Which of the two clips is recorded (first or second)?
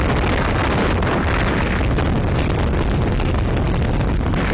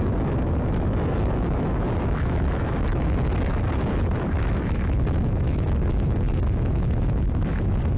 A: first